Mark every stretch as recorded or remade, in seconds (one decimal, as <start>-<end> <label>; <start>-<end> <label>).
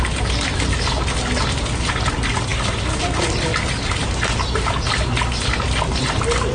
0.0-6.5 recorded